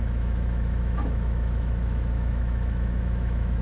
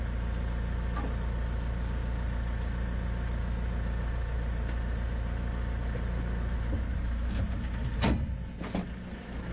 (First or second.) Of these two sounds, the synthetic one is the first